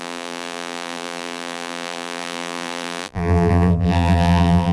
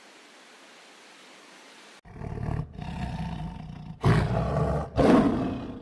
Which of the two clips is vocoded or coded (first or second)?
first